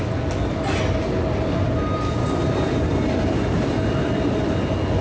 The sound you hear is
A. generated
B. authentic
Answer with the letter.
B